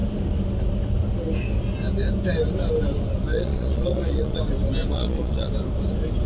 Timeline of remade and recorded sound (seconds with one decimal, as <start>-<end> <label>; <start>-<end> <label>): 0.0-3.3 recorded; 3.3-4.4 remade; 4.4-4.9 recorded; 4.9-5.5 remade; 5.5-6.3 recorded